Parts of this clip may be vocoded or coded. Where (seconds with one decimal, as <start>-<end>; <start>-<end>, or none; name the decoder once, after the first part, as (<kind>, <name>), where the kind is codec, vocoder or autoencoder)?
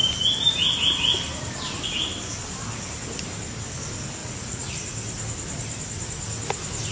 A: 4.2-4.7 (vocoder, Vocos)